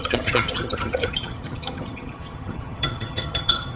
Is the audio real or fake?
fake